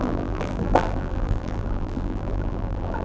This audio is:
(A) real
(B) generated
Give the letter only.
B